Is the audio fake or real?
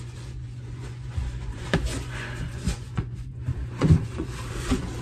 fake